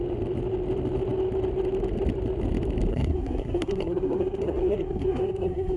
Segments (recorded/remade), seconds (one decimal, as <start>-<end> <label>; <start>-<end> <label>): 0.0-2.9 recorded; 2.9-5.8 remade